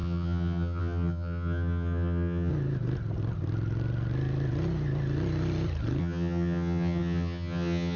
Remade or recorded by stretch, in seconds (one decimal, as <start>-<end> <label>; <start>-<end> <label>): 0.0-2.5 remade; 2.5-6.0 recorded; 6.0-8.0 remade